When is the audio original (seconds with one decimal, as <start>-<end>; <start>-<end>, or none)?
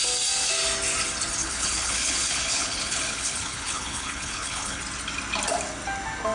0.0-1.4; 4.8-6.3